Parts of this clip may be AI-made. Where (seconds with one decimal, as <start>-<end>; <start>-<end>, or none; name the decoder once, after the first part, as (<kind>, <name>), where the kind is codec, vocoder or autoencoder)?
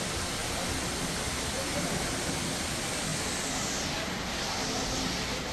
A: none